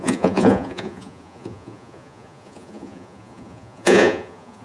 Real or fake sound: fake